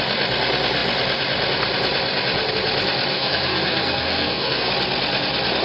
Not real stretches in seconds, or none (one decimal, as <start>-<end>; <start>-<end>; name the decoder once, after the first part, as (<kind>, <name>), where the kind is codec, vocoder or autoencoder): 3.1-4.7 (codec, SNAC)